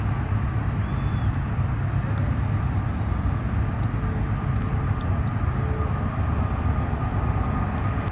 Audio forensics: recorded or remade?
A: recorded